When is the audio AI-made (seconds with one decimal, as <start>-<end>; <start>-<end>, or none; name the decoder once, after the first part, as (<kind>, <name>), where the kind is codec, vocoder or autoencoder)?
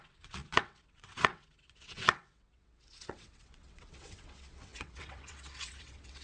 0.0-6.2 (vocoder, WaveNeXt)